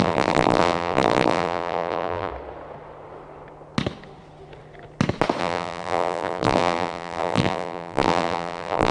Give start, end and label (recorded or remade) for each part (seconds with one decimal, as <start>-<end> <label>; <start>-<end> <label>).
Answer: 0.0-2.3 remade; 2.3-5.4 recorded; 5.4-8.9 remade